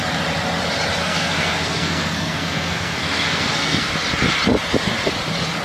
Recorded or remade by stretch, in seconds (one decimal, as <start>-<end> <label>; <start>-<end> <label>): 0.0-1.0 recorded; 1.0-3.9 remade; 3.9-5.6 recorded